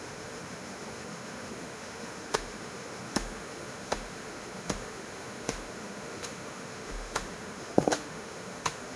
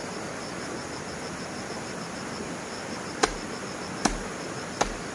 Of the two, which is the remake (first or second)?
first